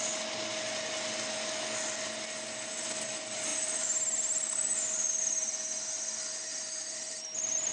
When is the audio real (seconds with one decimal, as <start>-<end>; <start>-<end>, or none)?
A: 0.0-7.7